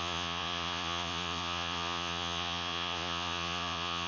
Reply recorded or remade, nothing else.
remade